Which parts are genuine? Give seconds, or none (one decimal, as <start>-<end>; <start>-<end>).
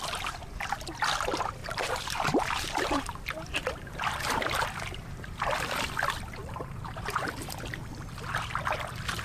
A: 0.0-1.6; 3.0-6.4; 7.3-9.2